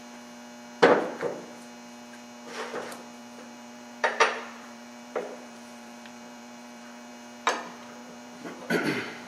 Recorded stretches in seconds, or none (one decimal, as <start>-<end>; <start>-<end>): 0.0-3.2; 7.1-8.0